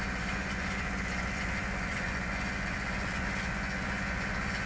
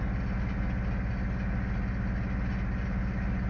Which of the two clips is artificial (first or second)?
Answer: first